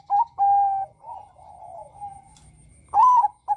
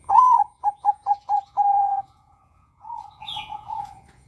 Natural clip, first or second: first